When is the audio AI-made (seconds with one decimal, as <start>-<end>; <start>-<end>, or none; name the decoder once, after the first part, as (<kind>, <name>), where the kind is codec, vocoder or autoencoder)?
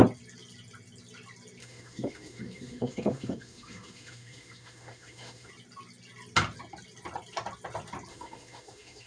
1.6-5.5 (autoencoder, DAC-VAE); 8.1-9.1